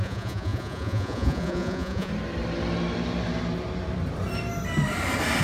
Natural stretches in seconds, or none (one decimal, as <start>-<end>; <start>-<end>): 2.1-5.4